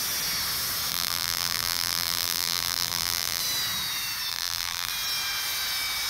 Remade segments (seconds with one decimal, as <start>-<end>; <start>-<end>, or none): 0.9-3.4; 4.3-4.9